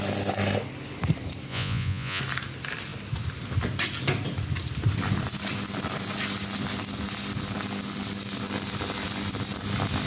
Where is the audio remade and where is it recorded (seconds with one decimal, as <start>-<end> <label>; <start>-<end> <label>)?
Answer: 0.0-1.5 recorded; 1.5-2.2 remade; 2.2-10.1 recorded